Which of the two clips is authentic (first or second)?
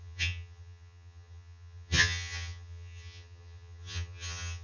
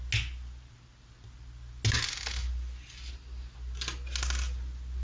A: second